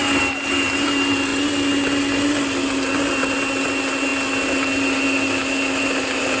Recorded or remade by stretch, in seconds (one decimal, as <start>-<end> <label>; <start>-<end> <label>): 0.0-6.4 recorded